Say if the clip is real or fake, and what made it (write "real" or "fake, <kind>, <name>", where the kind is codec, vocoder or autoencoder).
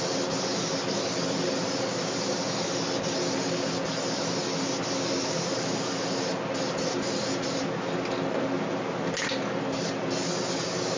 real